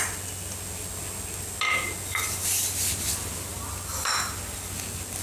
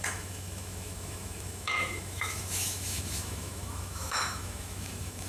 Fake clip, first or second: second